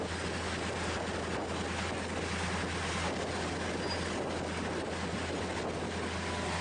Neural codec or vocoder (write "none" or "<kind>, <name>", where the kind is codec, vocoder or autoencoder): none